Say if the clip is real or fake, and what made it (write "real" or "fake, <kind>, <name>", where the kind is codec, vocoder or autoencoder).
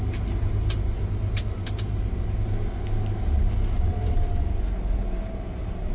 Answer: real